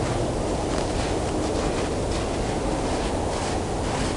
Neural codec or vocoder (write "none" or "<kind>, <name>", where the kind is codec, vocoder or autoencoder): none